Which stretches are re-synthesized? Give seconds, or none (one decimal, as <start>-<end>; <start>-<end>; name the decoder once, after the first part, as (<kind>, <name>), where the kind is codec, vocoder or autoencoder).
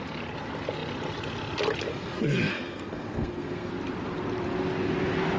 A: 1.9-3.7 (codec, SNAC)